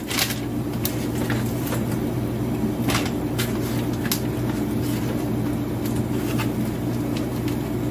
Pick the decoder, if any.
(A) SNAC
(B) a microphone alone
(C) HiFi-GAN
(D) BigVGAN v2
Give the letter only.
B